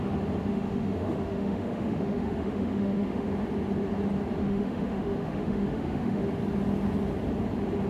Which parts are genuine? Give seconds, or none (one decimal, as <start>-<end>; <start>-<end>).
0.0-0.5; 3.3-4.4; 6.2-7.9